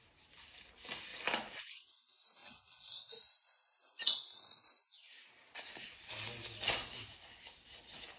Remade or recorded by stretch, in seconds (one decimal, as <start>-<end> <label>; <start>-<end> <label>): 0.0-8.2 recorded